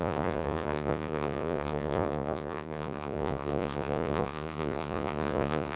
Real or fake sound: fake